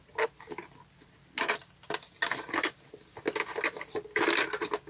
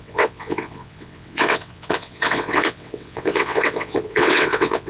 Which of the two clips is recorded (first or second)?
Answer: first